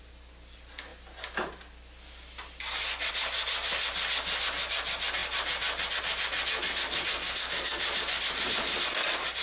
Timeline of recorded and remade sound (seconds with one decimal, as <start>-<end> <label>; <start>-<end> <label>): 0.0-7.1 recorded; 7.1-7.8 remade; 7.8-9.4 recorded